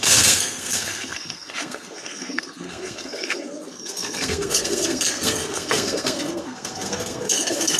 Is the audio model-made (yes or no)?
yes